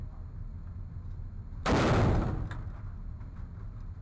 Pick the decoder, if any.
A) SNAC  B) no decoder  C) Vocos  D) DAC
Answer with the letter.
B